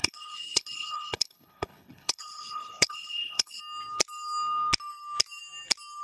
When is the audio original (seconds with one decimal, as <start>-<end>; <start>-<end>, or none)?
3.6-6.0